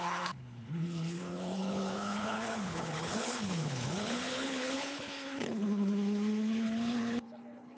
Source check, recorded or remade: remade